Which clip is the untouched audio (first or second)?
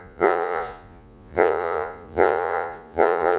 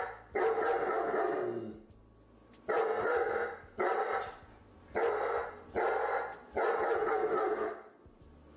second